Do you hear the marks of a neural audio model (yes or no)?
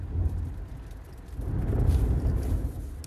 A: no